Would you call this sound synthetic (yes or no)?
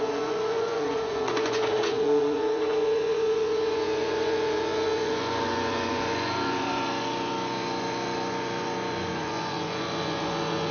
yes